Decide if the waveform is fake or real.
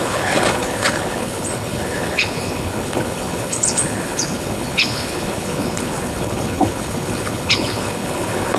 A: fake